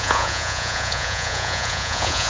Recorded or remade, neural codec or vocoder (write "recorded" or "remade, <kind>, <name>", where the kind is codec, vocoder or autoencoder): remade, vocoder, Vocos